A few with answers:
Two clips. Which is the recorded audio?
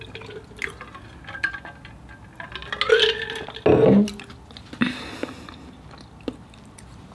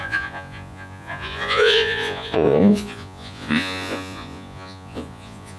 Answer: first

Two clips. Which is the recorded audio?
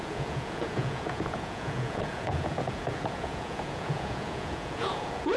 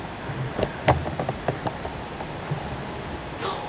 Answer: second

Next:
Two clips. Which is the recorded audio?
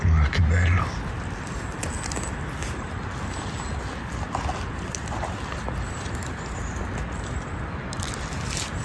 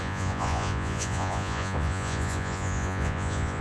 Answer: first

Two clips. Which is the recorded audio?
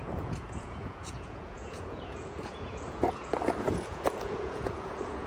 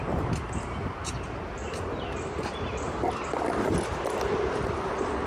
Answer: second